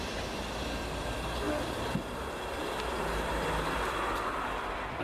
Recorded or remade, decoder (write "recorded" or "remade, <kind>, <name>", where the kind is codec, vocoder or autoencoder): recorded